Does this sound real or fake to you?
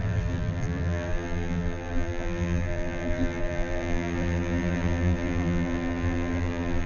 fake